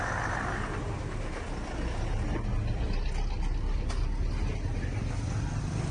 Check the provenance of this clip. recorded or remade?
recorded